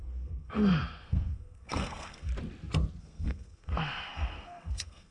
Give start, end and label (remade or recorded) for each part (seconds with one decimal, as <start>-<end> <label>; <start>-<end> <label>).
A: 0.0-2.3 remade; 2.3-3.0 recorded; 3.0-5.1 remade